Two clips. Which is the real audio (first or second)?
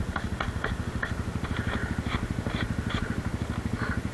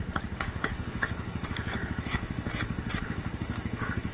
first